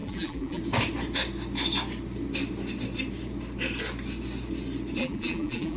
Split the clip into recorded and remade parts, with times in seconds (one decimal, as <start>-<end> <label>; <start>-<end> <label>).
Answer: 0.0-0.6 remade; 0.6-5.0 recorded; 5.0-5.8 remade

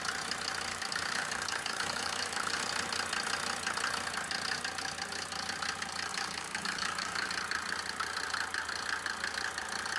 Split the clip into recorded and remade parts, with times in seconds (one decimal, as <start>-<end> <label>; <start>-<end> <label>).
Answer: 0.0-0.7 recorded; 0.7-2.6 remade; 2.6-6.1 recorded; 6.1-7.3 remade; 7.3-10.0 recorded

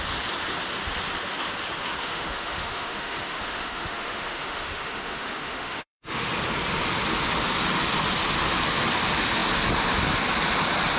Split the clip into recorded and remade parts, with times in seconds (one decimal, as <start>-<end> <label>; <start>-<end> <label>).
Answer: 0.0-2.0 recorded; 2.0-6.3 remade; 6.3-11.0 recorded

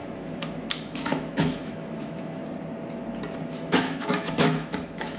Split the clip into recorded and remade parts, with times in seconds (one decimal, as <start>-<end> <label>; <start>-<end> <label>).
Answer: 0.0-2.4 remade; 2.4-3.5 recorded; 3.5-5.2 remade

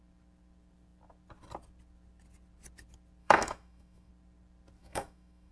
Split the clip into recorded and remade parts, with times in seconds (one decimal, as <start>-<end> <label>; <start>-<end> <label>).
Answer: 0.0-3.2 recorded; 3.2-4.1 remade; 4.1-4.8 recorded; 4.8-5.5 remade

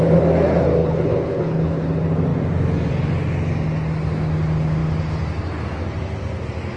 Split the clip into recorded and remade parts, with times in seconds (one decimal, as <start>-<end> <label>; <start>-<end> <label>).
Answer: 0.0-0.8 recorded; 0.8-1.9 remade; 1.9-6.8 recorded